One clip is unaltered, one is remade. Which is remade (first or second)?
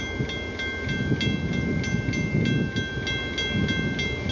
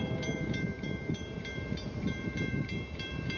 second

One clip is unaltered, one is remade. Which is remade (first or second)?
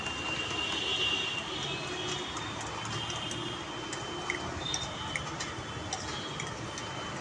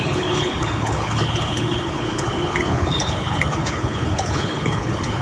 second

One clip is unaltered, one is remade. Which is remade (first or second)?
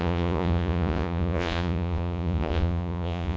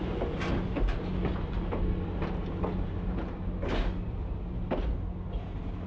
first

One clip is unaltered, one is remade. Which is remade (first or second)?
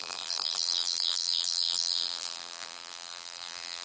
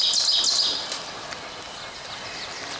first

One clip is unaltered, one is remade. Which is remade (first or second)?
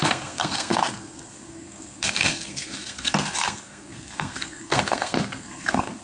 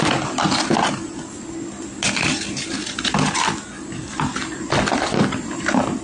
first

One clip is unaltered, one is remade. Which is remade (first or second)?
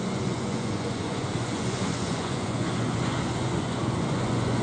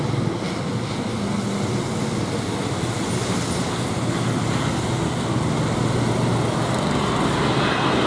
first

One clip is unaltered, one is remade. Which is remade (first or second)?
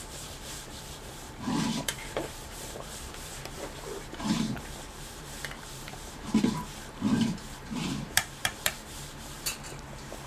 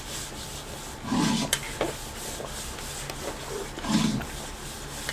first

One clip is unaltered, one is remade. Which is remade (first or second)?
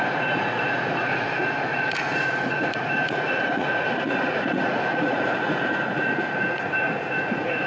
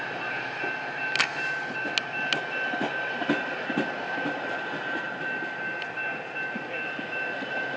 first